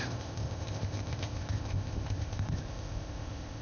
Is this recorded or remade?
remade